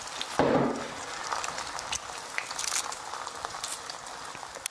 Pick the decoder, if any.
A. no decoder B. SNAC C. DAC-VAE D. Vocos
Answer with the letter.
A